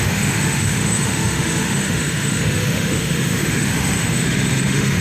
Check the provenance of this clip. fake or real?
fake